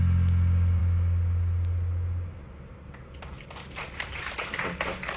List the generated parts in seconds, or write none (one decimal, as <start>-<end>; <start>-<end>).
none